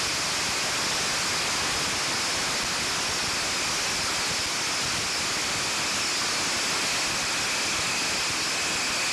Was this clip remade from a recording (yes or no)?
no